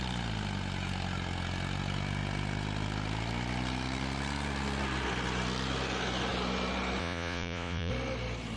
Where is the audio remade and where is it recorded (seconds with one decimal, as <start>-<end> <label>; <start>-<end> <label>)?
0.0-7.0 recorded; 7.0-7.9 remade; 7.9-8.6 recorded